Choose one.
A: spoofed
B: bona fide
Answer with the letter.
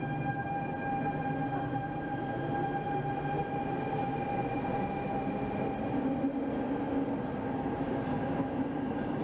B